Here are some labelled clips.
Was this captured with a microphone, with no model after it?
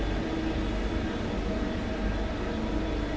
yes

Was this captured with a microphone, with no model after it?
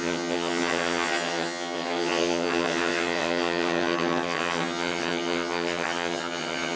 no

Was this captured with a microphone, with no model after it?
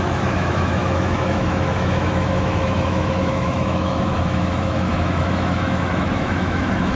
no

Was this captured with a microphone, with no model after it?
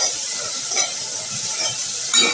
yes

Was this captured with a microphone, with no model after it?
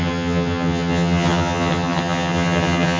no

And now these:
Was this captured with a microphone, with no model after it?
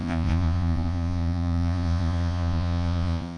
no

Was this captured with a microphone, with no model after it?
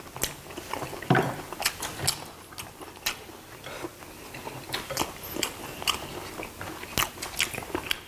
yes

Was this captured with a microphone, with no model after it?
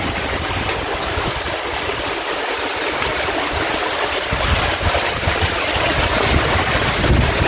yes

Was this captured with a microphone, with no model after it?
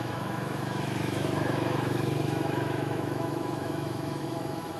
no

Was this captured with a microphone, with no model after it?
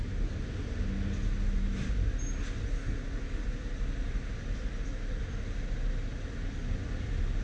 yes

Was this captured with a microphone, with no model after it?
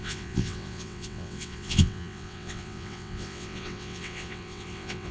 no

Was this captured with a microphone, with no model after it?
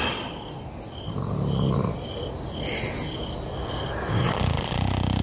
yes